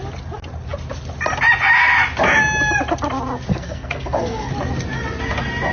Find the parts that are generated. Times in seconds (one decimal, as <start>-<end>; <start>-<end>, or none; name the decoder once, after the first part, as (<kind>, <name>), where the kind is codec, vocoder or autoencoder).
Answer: 3.5-4.5 (codec, SNAC)